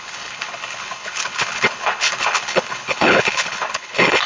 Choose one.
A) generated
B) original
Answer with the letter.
A